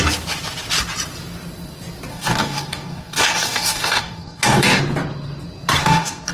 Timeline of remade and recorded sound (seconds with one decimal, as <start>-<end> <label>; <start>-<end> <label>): 0.0-2.1 recorded; 2.1-4.8 remade; 4.8-5.8 recorded; 5.8-6.3 remade